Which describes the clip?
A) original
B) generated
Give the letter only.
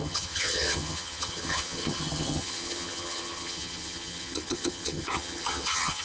B